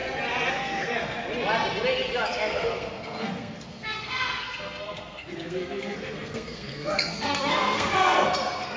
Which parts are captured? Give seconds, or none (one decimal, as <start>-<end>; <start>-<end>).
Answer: 0.0-0.5; 1.2-2.3